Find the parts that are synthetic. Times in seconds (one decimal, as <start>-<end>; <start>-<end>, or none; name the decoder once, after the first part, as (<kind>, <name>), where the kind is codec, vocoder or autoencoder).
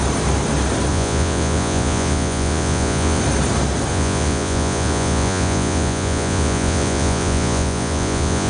0.9-3.2 (vocoder, Vocos); 3.9-8.5